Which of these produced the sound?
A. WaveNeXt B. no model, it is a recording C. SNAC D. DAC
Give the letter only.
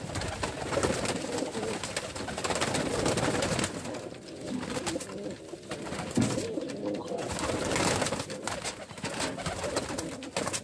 B